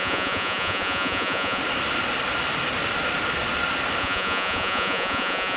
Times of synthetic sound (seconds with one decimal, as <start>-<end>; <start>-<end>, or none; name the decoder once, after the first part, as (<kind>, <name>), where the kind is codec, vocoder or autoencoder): 0.0-1.6 (vocoder, Vocos); 4.0-5.6